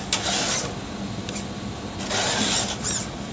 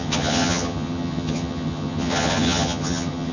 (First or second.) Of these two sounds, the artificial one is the second